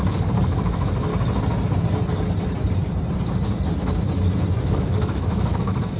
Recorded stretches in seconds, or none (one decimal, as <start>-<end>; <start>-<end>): 1.1-4.7